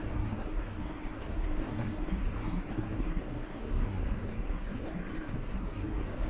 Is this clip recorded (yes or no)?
no